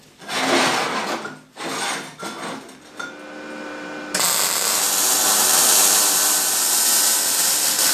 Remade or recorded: recorded